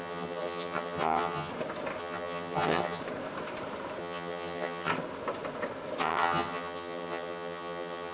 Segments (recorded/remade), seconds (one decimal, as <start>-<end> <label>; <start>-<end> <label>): 0.0-1.5 remade; 1.5-2.0 recorded; 2.0-3.0 remade; 3.0-4.0 recorded; 4.0-4.9 remade; 4.9-6.0 recorded; 6.0-8.1 remade